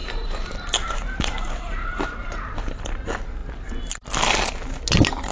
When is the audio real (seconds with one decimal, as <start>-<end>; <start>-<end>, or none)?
2.9-5.3